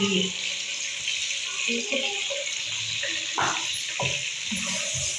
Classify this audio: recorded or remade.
recorded